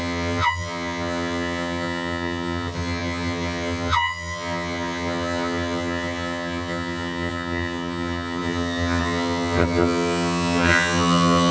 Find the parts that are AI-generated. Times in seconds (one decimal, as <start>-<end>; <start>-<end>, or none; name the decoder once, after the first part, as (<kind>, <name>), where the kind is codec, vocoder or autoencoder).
0.0-11.5 (vocoder, HiFi-GAN)